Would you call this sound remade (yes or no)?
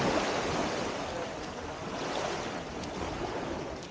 no